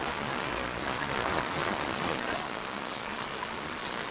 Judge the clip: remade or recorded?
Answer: remade